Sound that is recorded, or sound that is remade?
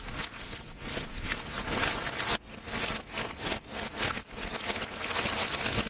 recorded